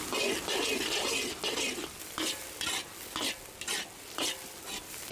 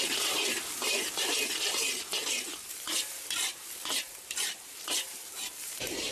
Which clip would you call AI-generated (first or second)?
second